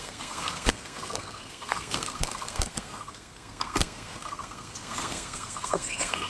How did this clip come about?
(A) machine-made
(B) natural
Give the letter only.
A